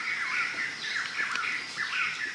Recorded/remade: recorded